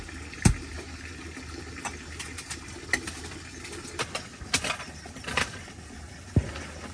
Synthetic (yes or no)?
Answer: no